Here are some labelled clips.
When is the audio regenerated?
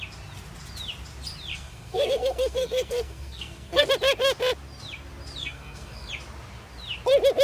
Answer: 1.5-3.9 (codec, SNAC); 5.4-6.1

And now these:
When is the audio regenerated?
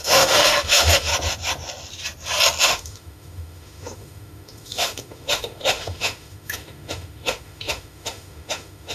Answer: 0.0-1.1 (autoencoder, DAC-VAE); 2.6-8.9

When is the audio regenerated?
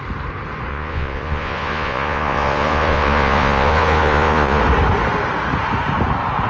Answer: 0.7-4.6 (vocoder, Vocos)